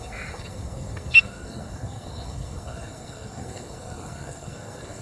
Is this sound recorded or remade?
remade